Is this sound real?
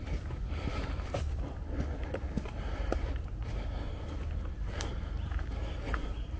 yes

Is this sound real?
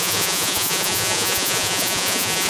no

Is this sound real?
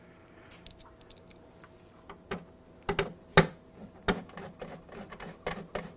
yes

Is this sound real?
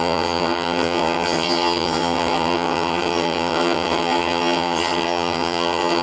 no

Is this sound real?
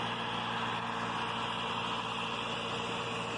yes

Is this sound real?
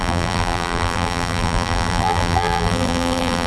no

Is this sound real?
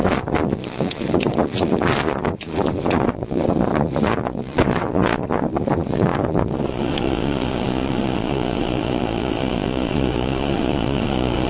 no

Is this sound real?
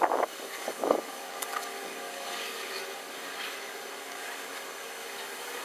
no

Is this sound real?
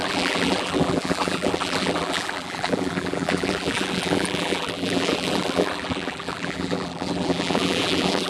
no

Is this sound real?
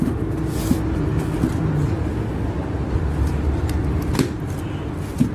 yes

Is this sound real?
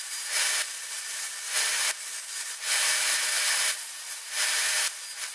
yes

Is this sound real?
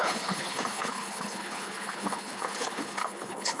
no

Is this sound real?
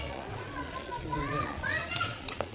no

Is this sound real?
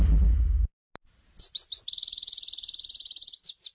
yes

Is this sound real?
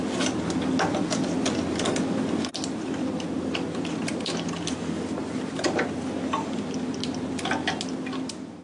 yes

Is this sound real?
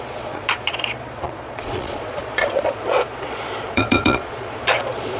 no